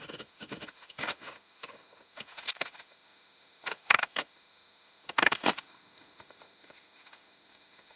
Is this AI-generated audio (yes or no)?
yes